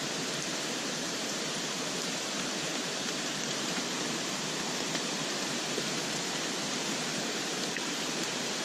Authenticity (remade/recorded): remade